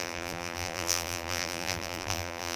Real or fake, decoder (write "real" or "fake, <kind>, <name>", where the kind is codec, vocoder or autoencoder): fake, vocoder, BigVGAN v2